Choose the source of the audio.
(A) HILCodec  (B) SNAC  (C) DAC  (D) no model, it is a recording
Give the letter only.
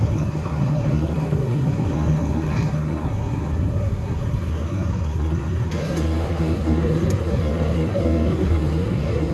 B